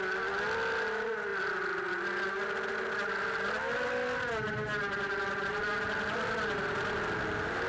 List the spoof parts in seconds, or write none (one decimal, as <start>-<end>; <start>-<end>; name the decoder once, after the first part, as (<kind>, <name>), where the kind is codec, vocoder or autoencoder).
none